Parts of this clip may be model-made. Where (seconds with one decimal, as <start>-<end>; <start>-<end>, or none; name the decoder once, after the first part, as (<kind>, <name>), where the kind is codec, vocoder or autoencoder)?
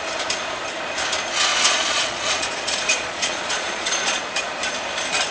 1.5-4.2 (vocoder, Vocos)